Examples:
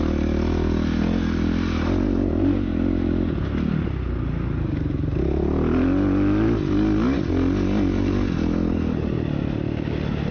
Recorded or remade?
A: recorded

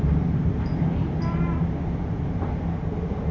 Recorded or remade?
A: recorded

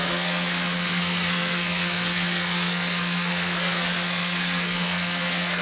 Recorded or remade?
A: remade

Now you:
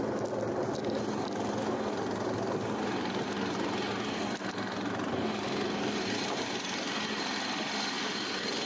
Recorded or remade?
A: recorded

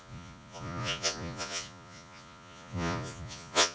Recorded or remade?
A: remade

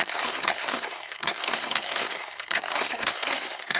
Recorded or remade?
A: remade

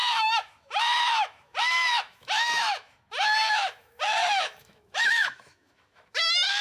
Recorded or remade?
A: remade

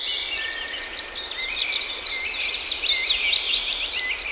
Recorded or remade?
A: recorded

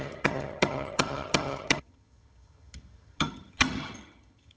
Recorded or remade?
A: remade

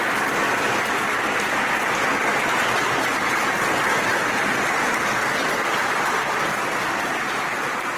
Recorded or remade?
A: recorded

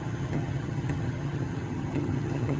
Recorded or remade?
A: remade